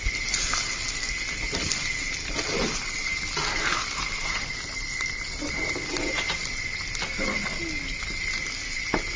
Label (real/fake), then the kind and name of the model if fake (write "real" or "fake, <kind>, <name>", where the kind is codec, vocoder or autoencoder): real